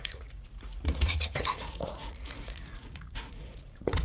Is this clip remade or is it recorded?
remade